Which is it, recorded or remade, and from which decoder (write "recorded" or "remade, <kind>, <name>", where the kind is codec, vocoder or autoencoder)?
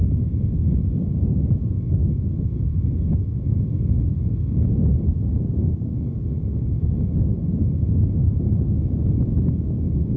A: remade, codec, DAC